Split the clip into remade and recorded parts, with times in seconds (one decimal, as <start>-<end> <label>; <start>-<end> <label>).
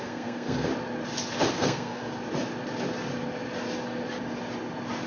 0.0-0.7 remade; 0.7-1.5 recorded; 1.5-2.0 remade; 2.0-5.1 recorded